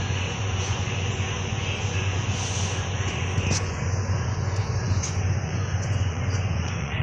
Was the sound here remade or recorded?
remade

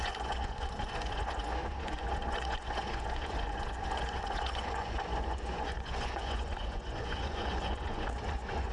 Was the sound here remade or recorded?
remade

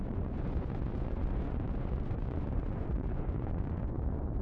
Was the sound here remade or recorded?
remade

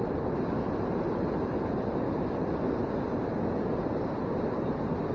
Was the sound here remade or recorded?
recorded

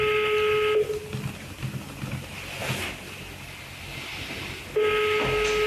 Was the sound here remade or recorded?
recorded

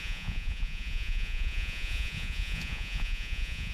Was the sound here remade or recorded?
remade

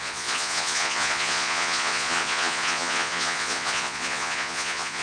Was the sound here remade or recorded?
remade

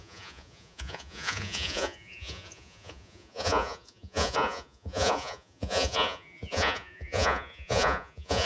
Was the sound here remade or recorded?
remade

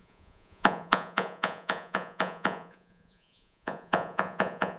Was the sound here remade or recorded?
remade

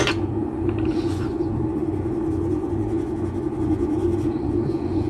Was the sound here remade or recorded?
remade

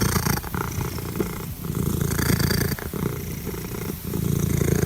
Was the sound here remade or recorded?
recorded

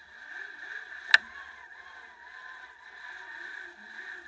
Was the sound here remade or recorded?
recorded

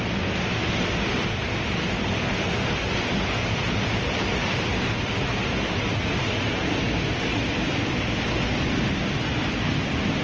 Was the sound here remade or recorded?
recorded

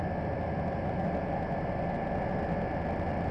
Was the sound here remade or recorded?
recorded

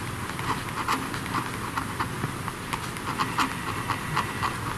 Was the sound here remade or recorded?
recorded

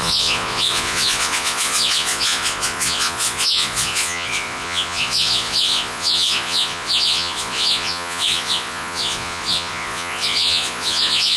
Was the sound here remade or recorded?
remade